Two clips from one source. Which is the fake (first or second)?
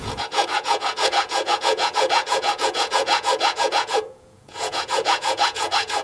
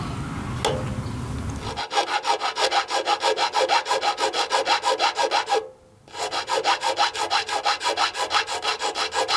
first